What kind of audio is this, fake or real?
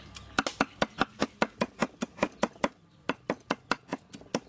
real